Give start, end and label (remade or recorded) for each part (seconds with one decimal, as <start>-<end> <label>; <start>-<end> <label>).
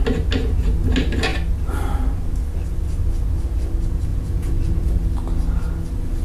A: 0.0-4.1 recorded; 4.1-5.0 remade; 5.0-6.2 recorded